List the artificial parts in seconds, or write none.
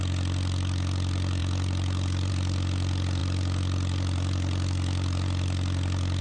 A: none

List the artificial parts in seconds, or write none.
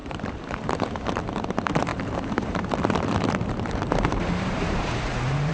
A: 0.0-1.0; 1.9-5.5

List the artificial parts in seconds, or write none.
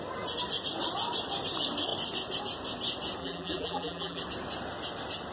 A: 3.2-4.2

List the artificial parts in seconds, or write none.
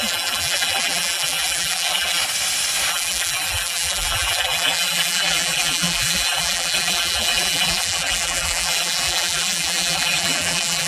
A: 0.0-2.2; 2.9-10.9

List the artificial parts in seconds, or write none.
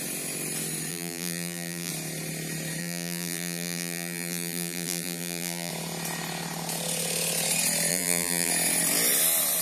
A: 0.9-1.9; 2.8-5.7; 7.9-8.5